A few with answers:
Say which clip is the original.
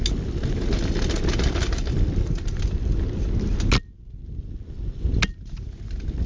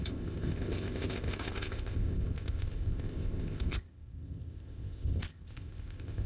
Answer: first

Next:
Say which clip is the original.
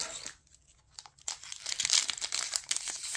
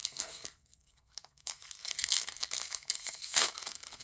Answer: first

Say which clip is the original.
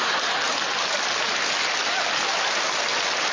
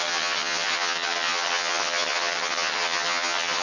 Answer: first